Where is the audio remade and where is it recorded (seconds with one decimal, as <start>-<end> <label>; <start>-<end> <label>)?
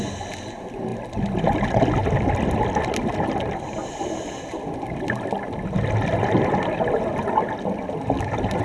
0.0-8.6 recorded